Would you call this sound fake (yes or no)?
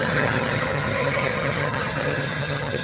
yes